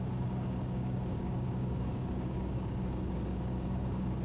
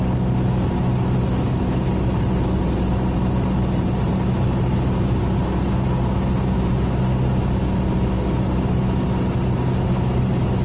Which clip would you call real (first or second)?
second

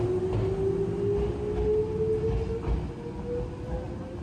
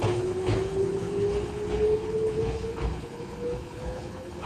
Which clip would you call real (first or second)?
first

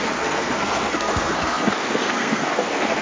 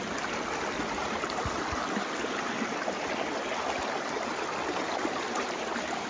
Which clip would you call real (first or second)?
second